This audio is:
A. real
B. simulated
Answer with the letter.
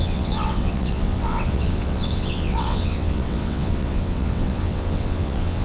B